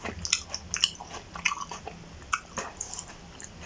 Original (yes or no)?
yes